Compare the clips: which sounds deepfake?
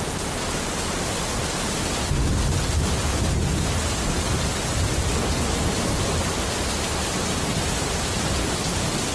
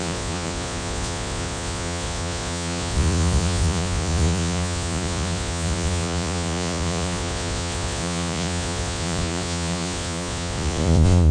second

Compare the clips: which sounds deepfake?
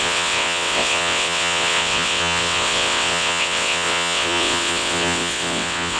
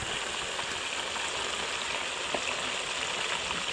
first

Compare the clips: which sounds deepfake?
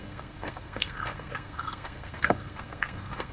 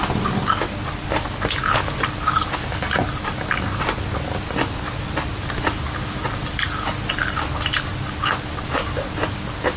first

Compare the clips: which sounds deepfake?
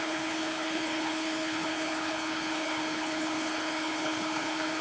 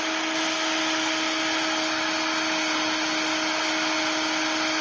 first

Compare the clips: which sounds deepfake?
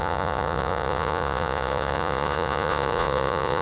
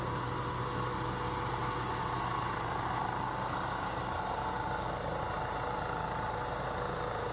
first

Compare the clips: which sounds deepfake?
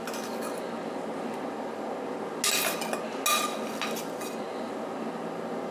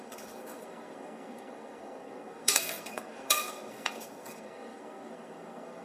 second